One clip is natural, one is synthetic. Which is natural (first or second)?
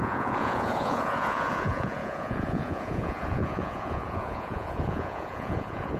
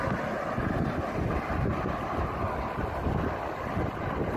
second